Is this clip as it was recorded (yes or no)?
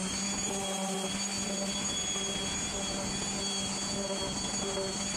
yes